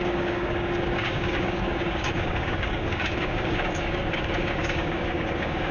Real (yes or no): no